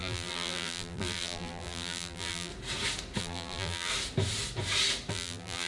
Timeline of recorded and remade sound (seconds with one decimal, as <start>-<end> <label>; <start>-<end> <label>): 0.0-2.5 remade; 2.5-3.2 recorded; 3.2-3.9 remade; 3.9-5.1 recorded; 5.1-5.7 remade